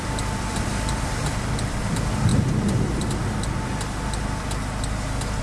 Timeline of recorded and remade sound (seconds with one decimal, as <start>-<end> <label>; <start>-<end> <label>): 0.0-2.3 remade; 2.3-5.4 recorded

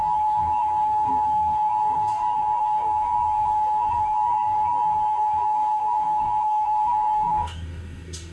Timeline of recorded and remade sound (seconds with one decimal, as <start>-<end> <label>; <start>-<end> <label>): 0.0-8.3 remade

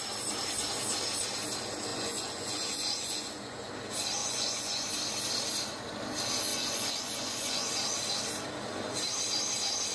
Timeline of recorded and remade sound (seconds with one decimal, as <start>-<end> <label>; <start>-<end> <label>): 0.0-1.9 recorded; 1.9-3.7 remade; 3.7-4.2 recorded; 4.2-4.9 remade; 4.9-6.5 recorded; 6.5-7.7 remade; 7.7-9.9 recorded

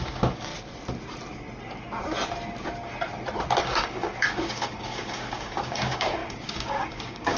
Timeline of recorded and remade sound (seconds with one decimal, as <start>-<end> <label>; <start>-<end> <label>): 0.0-0.5 remade; 0.5-3.6 recorded; 3.6-7.4 remade

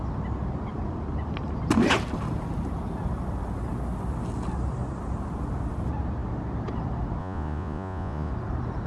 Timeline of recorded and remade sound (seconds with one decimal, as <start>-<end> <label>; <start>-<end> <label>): 0.0-7.2 recorded; 7.2-8.3 remade; 8.3-8.9 recorded

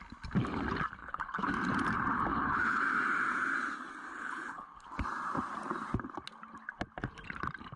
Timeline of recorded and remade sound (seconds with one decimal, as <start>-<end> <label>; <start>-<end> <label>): 0.0-1.0 recorded; 1.0-1.5 remade; 1.5-2.3 recorded; 2.3-2.8 remade; 2.8-4.1 recorded; 4.1-4.9 remade; 4.9-7.8 recorded

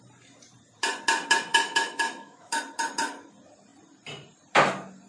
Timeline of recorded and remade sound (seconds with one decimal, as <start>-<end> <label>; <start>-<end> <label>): 0.0-1.5 recorded; 1.5-2.6 remade; 2.6-5.1 recorded